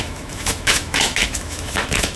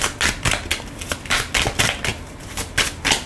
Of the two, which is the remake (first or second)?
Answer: first